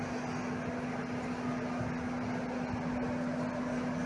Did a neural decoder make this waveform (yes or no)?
no